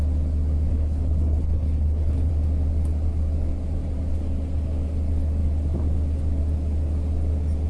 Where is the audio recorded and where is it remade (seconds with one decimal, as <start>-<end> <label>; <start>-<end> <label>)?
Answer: 0.0-0.7 recorded; 0.7-2.3 remade; 2.3-7.7 recorded